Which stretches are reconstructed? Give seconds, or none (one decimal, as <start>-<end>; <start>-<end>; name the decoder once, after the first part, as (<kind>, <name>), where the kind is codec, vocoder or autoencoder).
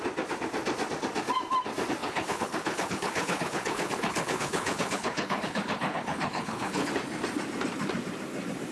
2.0-6.9 (codec, HILCodec)